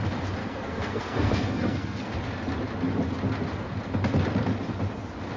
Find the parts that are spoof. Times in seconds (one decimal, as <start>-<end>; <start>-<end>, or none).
0.4-2.1